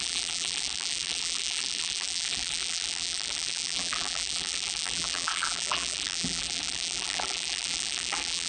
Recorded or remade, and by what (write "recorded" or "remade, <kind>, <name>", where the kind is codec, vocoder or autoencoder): remade, vocoder, BigVGAN v2